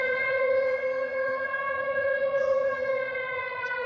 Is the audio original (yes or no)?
no